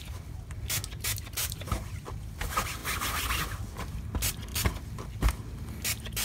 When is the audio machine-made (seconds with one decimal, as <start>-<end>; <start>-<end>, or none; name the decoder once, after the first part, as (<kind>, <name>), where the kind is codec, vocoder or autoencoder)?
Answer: 1.4-2.1 (vocoder, BigVGAN v2)